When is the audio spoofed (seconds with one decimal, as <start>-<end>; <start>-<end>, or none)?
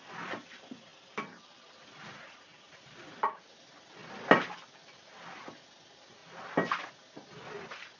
0.9-1.9; 4.0-5.4; 6.2-6.9